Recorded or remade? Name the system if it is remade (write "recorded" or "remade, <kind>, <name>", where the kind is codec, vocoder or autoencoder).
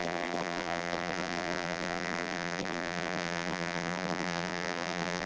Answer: remade, vocoder, BigVGAN v2